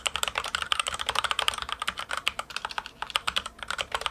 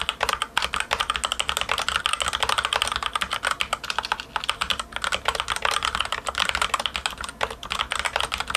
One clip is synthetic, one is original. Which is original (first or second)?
second